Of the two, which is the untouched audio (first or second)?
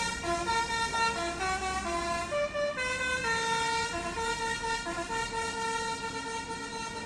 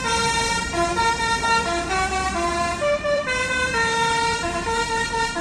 first